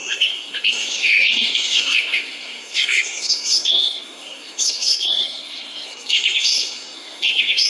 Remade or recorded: remade